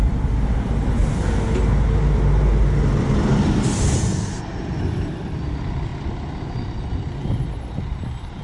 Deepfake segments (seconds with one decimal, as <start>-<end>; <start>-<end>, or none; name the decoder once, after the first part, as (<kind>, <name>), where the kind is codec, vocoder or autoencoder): 0.0-1.0 (vocoder, BigVGAN v2); 3.0-5.9; 7.7-8.4